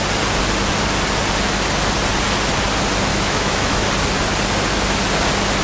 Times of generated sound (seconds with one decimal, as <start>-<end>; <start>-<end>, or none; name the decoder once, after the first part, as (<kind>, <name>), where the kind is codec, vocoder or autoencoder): 3.1-3.9 (autoencoder, DAC-VAE)